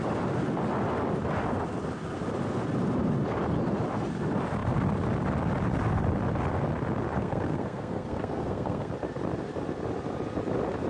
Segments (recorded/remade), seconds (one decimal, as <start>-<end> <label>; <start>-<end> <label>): 0.0-7.2 recorded; 7.2-8.9 remade; 8.9-10.9 recorded